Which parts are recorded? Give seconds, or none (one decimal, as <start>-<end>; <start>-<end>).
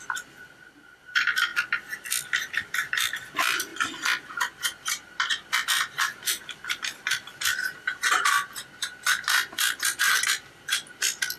3.7-4.9; 8.0-8.8